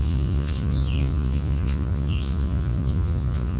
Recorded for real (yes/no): no